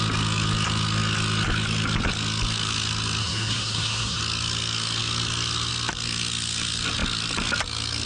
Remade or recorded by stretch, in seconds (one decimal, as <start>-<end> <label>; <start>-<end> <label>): 0.0-3.2 recorded; 3.2-4.2 remade; 4.2-8.1 recorded